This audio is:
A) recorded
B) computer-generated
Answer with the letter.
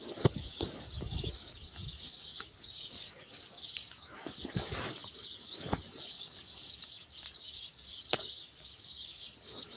B